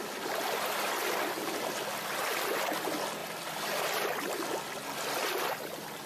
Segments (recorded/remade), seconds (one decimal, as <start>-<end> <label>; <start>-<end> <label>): 0.0-6.1 recorded